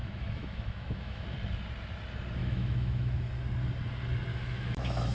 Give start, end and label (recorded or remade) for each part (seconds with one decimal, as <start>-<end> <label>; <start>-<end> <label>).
0.0-1.2 remade; 1.2-2.4 recorded; 2.4-3.3 remade; 3.3-4.3 recorded; 4.3-5.1 remade